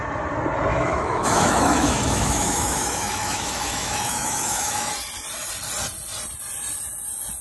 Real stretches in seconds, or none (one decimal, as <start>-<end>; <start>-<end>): 0.0-0.7; 4.9-7.4